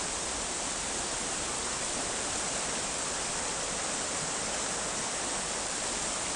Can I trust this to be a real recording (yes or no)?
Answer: yes